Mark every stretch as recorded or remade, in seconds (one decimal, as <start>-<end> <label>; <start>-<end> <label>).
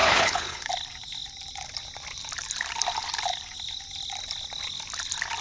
0.0-0.7 remade; 0.7-5.4 recorded